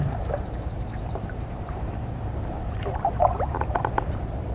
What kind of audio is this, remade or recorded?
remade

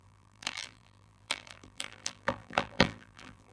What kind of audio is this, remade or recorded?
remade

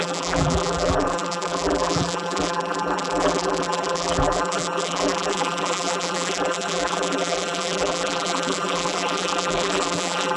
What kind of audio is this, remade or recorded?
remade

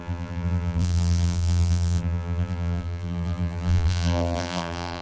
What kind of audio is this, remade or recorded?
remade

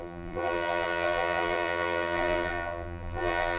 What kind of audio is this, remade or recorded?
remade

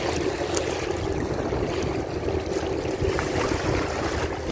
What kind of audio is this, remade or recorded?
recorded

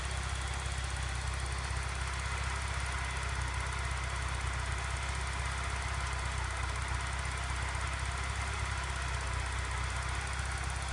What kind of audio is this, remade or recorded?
recorded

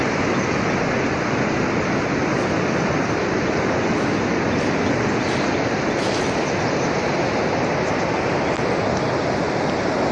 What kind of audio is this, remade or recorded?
recorded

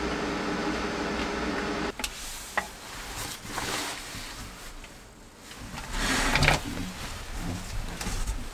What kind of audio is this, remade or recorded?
recorded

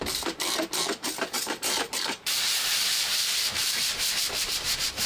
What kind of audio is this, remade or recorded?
remade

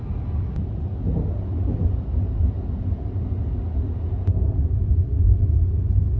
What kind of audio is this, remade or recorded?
recorded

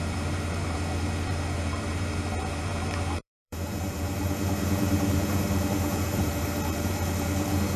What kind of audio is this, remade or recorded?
remade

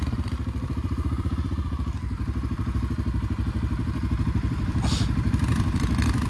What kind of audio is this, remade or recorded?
remade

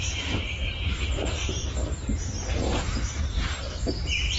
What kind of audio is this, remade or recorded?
remade